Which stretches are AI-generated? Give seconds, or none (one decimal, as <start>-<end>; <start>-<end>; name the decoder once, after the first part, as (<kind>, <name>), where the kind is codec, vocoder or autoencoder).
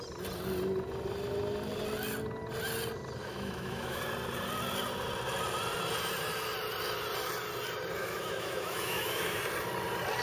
3.2-4.0 (autoencoder, DAC-VAE); 8.0-9.4